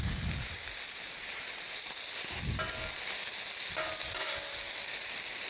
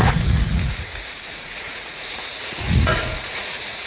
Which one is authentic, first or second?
first